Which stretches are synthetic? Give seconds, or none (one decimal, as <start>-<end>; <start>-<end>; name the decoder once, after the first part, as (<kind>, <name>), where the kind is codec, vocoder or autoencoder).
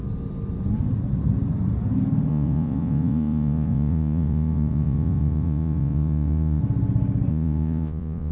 2.3-6.6 (vocoder, Vocos); 7.3-8.3